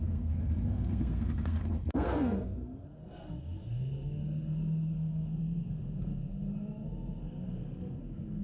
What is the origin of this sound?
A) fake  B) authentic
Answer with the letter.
A